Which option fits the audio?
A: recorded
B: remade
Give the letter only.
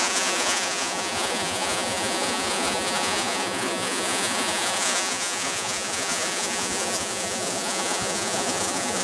B